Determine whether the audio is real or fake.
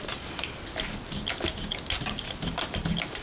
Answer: real